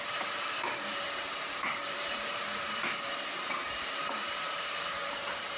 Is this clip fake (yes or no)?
yes